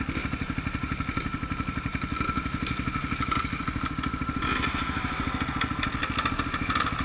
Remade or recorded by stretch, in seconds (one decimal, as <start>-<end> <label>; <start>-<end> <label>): 0.0-7.0 recorded